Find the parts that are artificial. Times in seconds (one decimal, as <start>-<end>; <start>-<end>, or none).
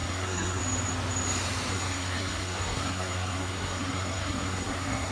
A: 0.0-0.6; 1.7-5.1